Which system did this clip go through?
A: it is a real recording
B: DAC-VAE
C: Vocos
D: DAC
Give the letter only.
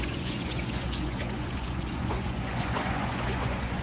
C